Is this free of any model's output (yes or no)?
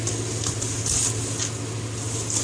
yes